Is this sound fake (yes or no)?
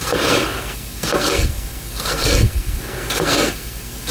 yes